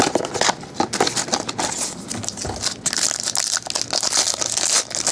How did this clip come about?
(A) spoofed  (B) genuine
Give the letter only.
B